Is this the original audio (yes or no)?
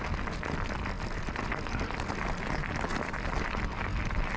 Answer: yes